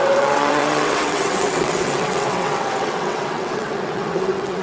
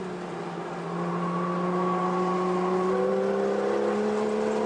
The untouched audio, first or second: second